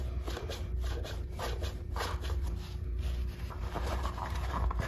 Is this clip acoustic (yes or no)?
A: no